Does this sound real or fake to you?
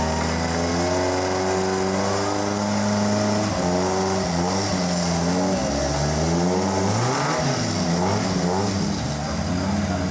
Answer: real